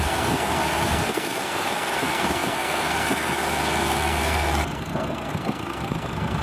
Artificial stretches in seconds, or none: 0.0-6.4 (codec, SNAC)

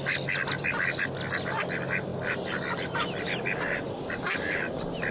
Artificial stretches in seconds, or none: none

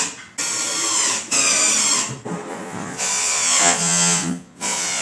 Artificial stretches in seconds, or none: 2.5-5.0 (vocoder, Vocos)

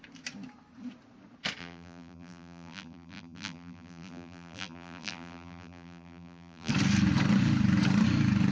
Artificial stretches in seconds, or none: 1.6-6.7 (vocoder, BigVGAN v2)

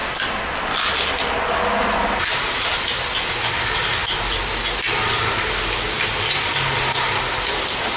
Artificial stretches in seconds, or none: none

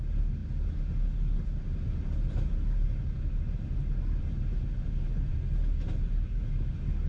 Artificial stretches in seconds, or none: none